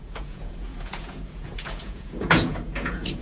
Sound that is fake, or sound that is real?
fake